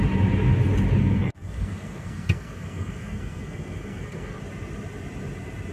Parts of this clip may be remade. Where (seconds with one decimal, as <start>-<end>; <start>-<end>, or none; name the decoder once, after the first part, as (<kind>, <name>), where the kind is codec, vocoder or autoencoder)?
1.0-4.4 (codec, SNAC)